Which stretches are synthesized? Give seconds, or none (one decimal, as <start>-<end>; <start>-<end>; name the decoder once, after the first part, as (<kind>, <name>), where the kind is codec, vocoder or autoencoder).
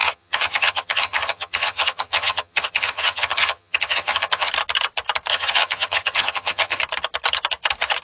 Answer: 0.0-4.5 (vocoder, HiFi-GAN); 5.3-6.8